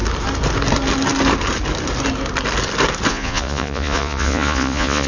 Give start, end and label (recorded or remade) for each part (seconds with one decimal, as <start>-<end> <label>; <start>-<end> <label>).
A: 0.0-3.1 recorded; 3.1-5.1 remade